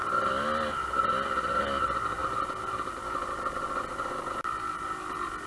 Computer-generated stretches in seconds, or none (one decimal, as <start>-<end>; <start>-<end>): none